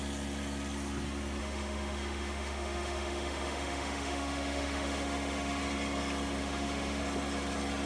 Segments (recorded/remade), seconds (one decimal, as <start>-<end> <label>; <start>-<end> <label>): 0.0-1.4 recorded; 1.4-5.6 remade; 5.6-6.4 recorded; 6.4-7.0 remade; 7.0-7.8 recorded